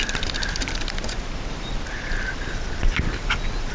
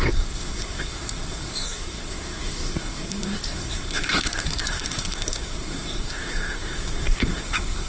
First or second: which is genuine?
first